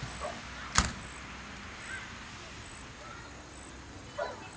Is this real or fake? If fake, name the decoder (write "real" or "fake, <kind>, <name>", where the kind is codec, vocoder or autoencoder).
real